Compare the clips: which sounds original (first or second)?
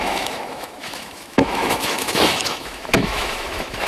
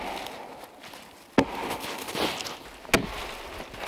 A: second